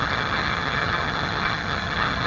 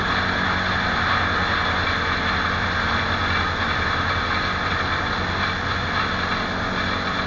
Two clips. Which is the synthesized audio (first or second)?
first